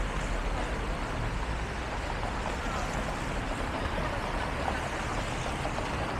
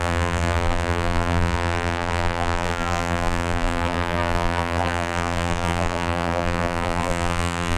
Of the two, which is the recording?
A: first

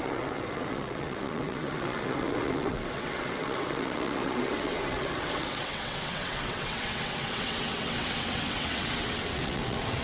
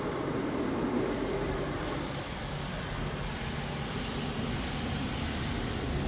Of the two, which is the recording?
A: second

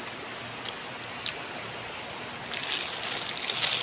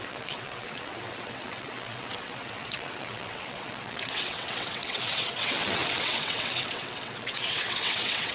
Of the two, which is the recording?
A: first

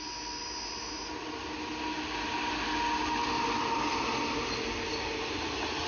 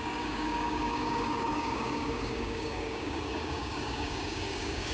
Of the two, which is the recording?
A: first